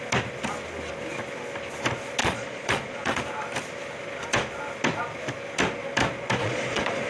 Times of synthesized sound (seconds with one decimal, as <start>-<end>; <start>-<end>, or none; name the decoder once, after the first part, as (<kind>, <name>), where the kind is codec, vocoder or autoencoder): 2.2-3.2 (vocoder, Vocos); 6.4-7.1